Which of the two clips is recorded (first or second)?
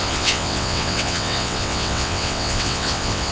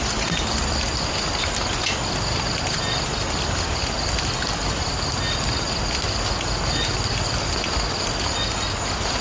second